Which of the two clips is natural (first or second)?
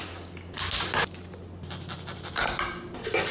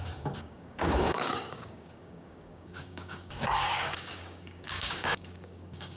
first